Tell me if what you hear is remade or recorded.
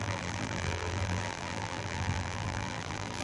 remade